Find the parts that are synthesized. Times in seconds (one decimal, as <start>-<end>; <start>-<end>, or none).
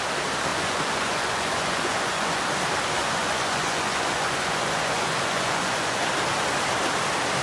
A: 0.5-2.4; 3.0-6.1